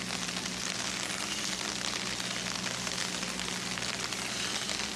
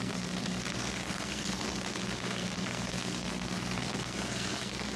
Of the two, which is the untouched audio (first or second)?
first